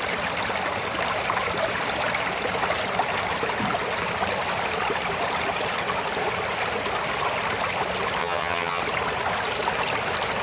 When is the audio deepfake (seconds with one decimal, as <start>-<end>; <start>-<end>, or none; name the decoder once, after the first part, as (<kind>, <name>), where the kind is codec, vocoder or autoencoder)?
8.2-8.8 (vocoder, HiFi-GAN)